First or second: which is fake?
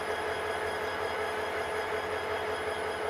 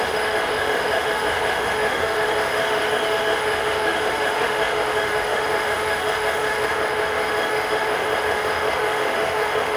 second